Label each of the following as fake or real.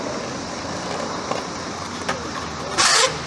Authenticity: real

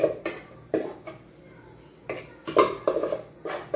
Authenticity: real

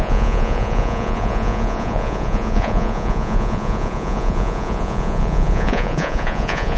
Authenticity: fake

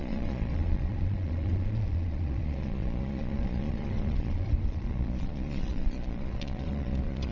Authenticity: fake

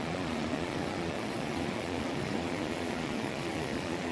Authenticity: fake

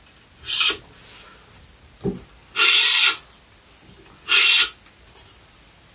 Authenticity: real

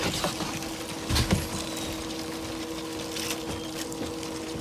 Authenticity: real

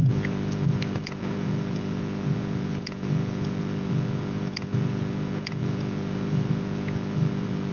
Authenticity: fake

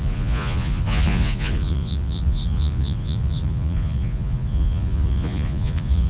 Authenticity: fake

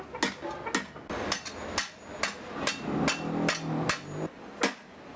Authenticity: real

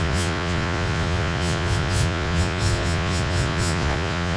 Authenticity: fake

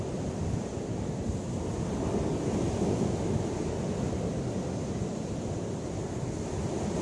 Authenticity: real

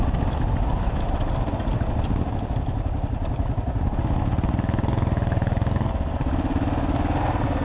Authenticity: real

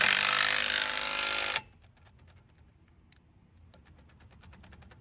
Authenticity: real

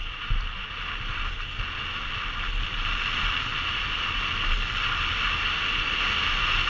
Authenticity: real